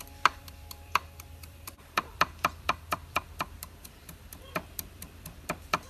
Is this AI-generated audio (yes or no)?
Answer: yes